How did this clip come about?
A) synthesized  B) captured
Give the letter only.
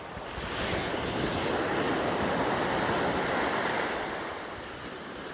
B